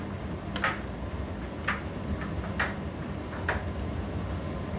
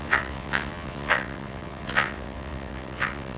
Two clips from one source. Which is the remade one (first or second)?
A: second